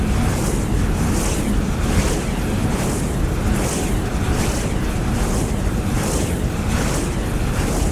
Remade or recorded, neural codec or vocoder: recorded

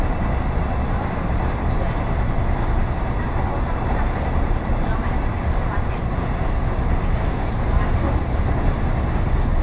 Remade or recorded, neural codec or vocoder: recorded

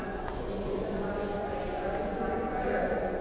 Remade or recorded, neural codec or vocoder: remade, vocoder, Vocos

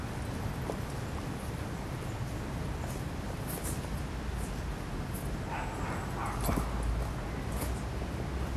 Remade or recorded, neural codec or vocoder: recorded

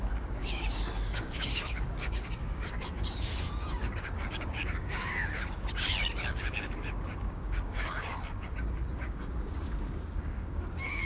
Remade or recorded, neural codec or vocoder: remade, codec, DAC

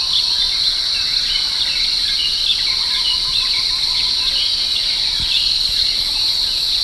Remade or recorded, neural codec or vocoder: recorded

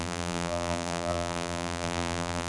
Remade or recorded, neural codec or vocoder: remade, vocoder, BigVGAN v2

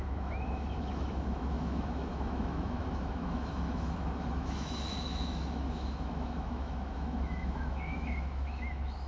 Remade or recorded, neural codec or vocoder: remade, autoencoder, DAC-VAE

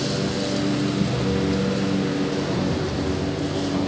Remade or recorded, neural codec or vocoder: recorded